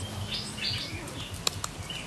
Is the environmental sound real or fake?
real